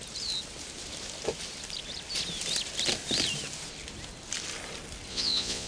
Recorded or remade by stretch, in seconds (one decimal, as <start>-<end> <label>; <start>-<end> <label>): 0.0-5.1 recorded; 5.1-5.7 remade